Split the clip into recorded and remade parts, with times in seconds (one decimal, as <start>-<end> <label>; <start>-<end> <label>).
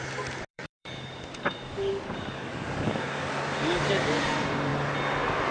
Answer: 0.0-0.5 recorded; 0.5-3.8 remade; 3.8-5.5 recorded